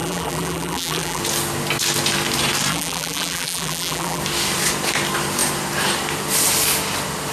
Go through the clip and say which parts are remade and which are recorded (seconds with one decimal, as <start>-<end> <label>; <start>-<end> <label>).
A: 0.0-1.2 remade; 1.2-2.7 recorded; 2.7-4.2 remade; 4.2-7.3 recorded